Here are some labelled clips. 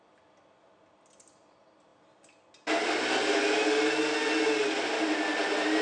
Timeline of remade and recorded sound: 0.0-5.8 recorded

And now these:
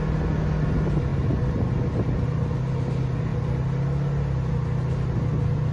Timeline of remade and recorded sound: 0.0-5.7 recorded

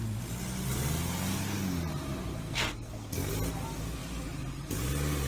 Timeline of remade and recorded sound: 0.0-2.3 recorded; 2.3-3.3 remade; 3.3-5.3 recorded